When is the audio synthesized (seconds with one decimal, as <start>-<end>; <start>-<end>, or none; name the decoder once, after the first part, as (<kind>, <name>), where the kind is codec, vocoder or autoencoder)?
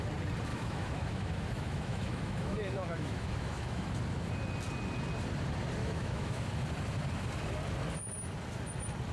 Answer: 0.5-3.9 (autoencoder, DAC-VAE); 5.8-6.5